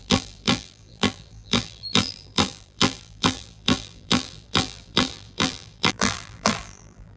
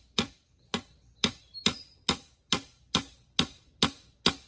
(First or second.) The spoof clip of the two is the first